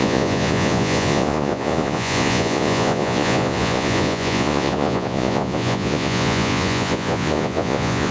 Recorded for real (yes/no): no